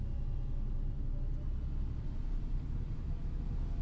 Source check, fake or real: real